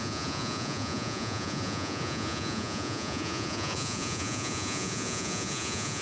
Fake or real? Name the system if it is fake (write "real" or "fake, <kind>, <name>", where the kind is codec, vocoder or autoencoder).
fake, vocoder, Vocos